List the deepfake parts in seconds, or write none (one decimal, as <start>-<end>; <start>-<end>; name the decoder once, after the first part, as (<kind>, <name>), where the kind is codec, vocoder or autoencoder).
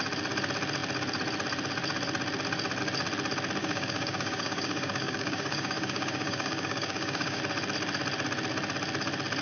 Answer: 3.6-7.4 (codec, DAC)